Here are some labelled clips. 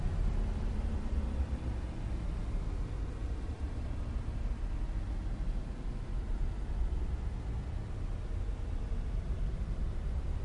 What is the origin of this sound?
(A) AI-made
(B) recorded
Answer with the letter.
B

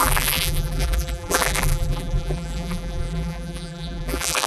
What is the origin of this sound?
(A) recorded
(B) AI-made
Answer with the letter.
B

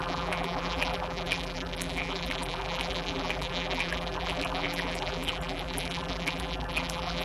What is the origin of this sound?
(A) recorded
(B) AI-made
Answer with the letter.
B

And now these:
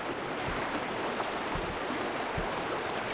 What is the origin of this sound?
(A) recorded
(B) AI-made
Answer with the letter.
A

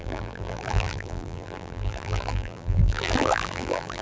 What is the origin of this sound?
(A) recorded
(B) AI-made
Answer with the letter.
B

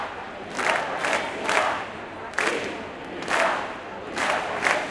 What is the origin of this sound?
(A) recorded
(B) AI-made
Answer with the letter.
B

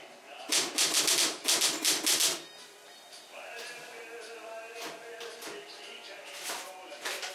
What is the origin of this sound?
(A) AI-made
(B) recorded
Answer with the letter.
A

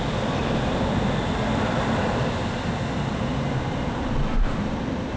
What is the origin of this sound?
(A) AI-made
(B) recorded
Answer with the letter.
B